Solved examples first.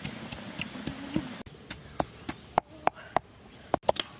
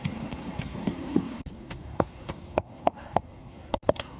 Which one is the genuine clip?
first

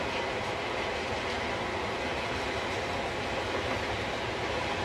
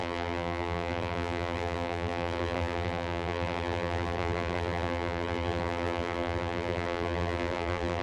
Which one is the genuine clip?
first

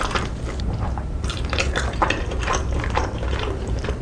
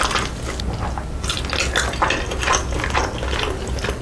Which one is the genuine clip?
second